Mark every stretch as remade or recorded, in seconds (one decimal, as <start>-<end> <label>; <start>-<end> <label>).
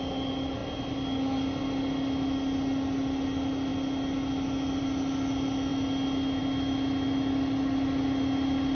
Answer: 0.0-8.7 recorded